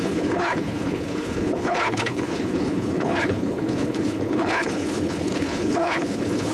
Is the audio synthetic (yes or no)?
yes